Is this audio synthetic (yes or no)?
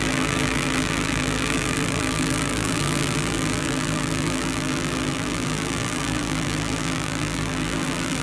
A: yes